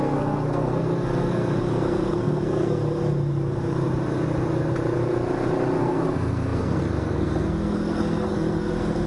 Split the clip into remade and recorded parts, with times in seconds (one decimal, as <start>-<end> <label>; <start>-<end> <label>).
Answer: 0.0-2.8 remade; 2.8-5.8 recorded; 5.8-9.1 remade